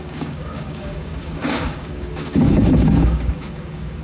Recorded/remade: remade